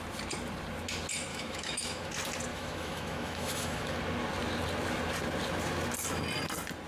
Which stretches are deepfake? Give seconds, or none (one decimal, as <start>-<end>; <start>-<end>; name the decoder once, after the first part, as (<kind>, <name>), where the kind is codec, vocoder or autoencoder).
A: 1.3-2.1 (autoencoder, DAC-VAE); 2.5-4.0